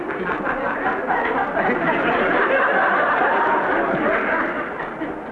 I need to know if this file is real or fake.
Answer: real